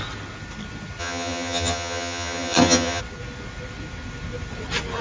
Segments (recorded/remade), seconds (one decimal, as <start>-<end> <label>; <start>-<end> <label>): 0.0-1.0 recorded; 1.0-3.0 remade; 3.0-5.0 recorded